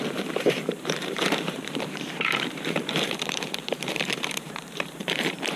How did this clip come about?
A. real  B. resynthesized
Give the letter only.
B